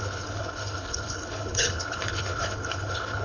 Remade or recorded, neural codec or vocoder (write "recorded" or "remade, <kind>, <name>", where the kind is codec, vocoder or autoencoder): remade, codec, HILCodec